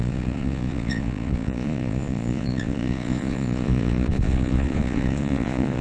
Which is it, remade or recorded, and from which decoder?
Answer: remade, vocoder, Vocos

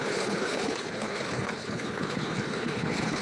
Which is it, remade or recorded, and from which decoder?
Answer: remade, codec, HILCodec